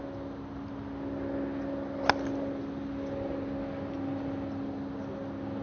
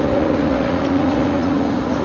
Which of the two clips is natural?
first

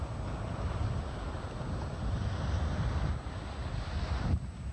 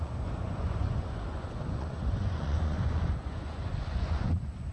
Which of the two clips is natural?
first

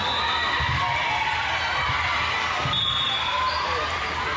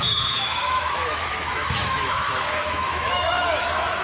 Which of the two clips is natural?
first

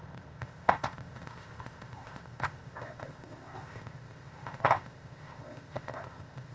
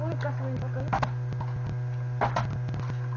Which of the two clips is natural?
second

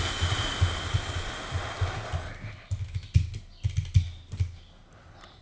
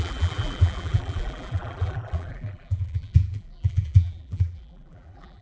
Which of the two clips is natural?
first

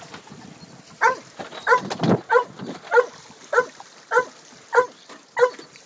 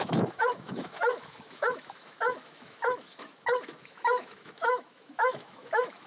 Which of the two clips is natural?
first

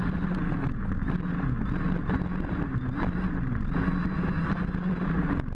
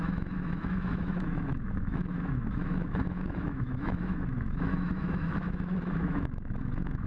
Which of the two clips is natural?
first